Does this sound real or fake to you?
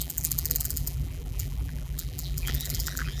fake